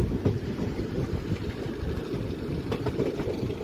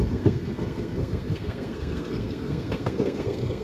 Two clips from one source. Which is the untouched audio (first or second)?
first